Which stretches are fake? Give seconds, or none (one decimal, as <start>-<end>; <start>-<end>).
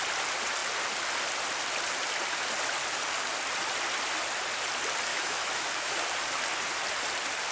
5.1-5.9